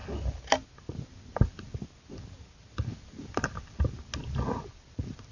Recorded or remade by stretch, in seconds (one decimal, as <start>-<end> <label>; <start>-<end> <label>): 0.0-5.3 recorded